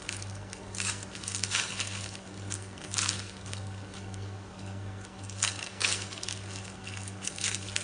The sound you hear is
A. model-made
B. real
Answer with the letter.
A